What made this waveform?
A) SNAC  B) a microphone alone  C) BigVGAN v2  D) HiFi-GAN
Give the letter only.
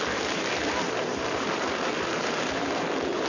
C